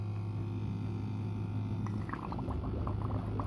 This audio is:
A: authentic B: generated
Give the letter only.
A